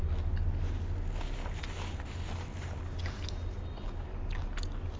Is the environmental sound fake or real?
real